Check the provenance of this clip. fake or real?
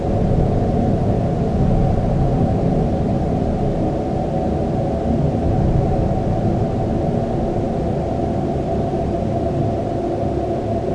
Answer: real